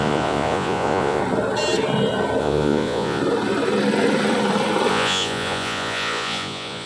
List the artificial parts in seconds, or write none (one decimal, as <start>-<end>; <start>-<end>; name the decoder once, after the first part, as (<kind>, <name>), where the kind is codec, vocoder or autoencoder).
0.0-1.2 (vocoder, Vocos); 2.4-3.2; 4.9-6.9

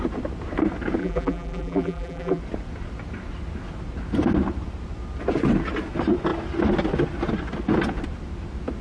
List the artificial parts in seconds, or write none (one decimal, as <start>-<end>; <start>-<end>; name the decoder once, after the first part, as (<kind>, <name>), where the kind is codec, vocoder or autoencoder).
1.0-2.4 (vocoder, BigVGAN v2)

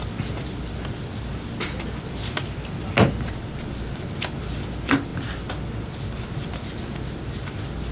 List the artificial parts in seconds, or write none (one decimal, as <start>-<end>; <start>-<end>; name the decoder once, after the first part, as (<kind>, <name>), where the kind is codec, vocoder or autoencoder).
none